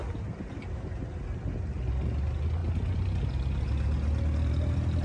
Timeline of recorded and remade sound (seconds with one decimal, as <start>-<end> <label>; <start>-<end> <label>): 0.0-5.0 recorded